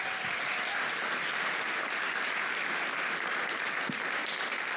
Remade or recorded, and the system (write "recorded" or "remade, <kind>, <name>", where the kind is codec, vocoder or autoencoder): recorded